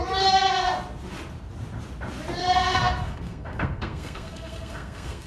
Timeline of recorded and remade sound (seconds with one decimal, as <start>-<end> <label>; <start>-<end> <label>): 0.0-2.4 recorded; 2.4-5.3 remade